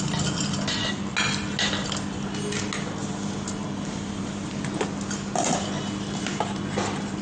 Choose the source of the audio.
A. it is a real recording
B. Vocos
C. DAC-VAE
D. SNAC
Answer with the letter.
A